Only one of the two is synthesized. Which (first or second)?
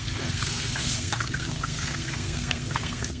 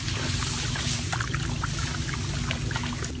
first